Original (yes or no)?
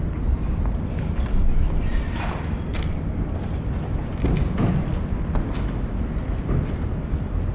yes